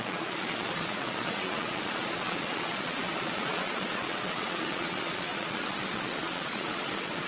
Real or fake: fake